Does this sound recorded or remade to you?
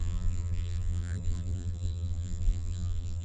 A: remade